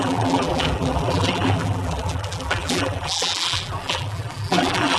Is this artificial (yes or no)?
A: yes